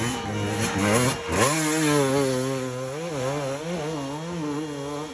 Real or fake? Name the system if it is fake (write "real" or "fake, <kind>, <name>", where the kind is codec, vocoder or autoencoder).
real